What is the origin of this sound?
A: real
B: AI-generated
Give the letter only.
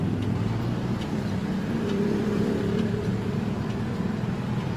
B